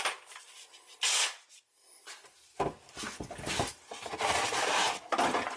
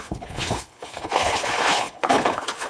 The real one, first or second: first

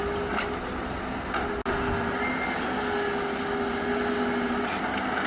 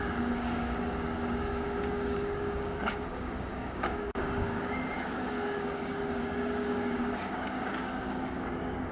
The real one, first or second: first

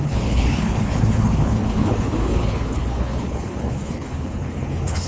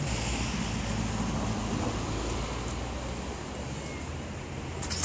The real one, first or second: second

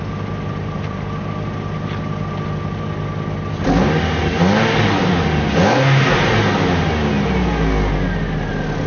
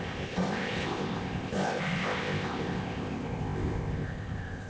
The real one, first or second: first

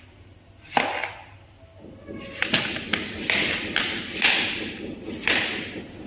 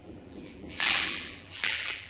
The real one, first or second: first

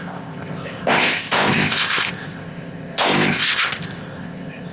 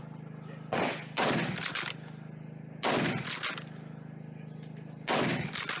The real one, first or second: second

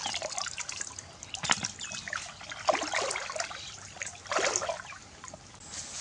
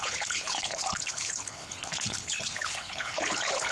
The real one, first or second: first